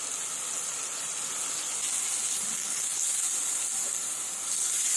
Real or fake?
real